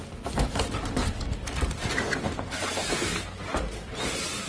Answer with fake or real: real